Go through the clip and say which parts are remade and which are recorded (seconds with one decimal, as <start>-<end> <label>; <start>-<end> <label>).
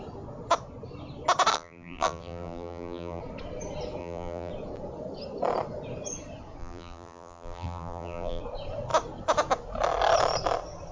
0.0-1.5 recorded; 1.5-3.2 remade; 3.2-4.0 recorded; 4.0-4.5 remade; 4.5-6.6 recorded; 6.6-8.4 remade; 8.4-10.9 recorded